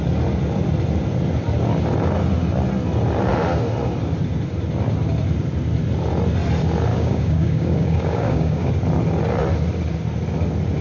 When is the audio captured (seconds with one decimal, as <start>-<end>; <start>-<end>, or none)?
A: 0.0-6.9; 8.7-10.8